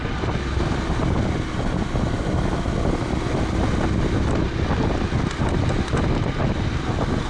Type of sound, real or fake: real